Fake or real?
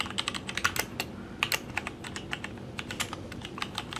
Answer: real